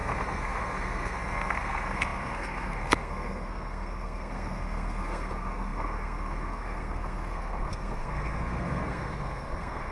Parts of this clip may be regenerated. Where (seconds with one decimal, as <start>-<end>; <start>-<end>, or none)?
0.0-9.9